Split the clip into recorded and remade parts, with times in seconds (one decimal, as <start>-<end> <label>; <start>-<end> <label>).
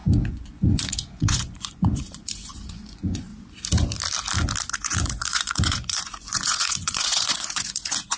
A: 0.0-3.3 remade; 3.3-4.7 recorded; 4.7-8.2 remade